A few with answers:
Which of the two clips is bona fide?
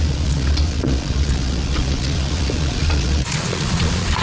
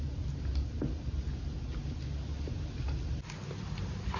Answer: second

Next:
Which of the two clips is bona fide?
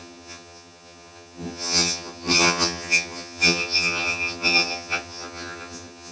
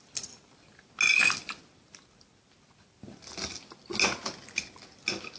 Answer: second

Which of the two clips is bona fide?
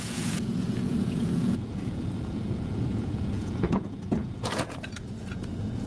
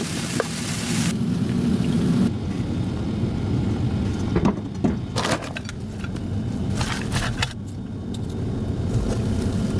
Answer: second